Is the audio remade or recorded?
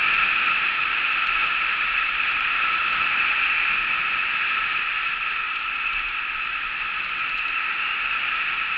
recorded